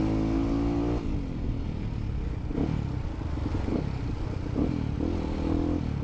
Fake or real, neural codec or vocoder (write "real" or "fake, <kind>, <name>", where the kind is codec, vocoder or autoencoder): real